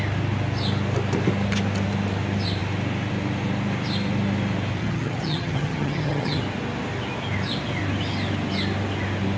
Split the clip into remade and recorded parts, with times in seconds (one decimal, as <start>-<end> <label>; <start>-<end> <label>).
0.0-4.8 recorded; 4.8-6.4 remade; 6.4-9.4 recorded